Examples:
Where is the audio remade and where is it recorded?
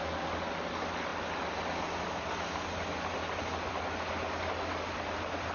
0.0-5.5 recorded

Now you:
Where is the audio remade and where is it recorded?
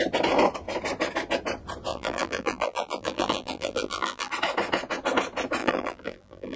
0.0-1.9 recorded; 1.9-4.3 remade; 4.3-5.6 recorded; 5.6-6.6 remade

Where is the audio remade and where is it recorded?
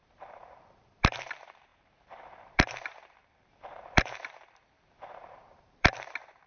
0.0-6.5 remade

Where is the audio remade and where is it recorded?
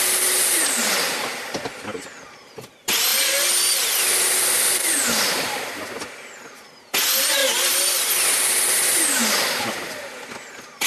0.0-10.9 recorded